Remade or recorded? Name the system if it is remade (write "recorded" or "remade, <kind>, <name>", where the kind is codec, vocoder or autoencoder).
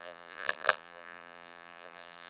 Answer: remade, vocoder, BigVGAN v2